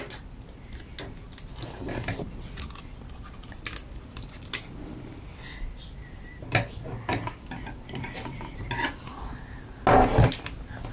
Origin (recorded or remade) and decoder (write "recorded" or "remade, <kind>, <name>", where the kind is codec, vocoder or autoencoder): recorded